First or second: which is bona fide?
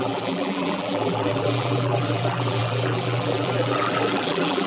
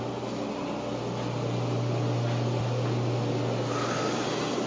second